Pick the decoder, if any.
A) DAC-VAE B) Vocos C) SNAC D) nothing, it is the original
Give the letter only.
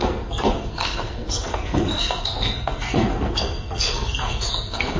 C